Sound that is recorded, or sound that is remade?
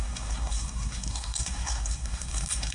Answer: remade